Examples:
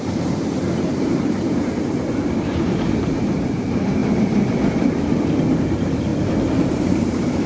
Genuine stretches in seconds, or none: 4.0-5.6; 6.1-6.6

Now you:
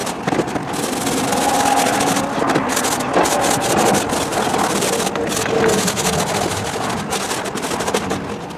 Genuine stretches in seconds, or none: 0.0-4.3; 4.9-8.6

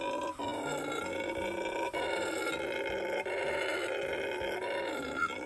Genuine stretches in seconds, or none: 0.0-5.5

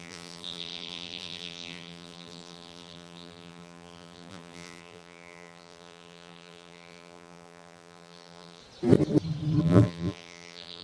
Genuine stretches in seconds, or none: 8.6-9.6

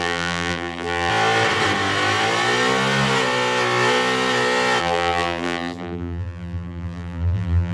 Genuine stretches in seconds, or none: 1.1-4.8

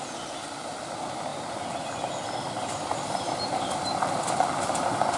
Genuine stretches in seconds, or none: 0.0-5.2

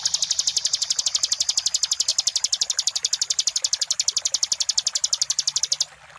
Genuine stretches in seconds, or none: 0.0-2.1; 5.6-6.2